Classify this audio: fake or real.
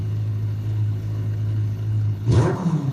fake